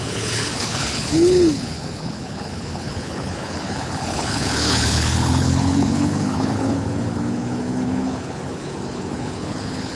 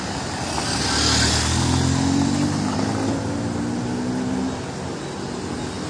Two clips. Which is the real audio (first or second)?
second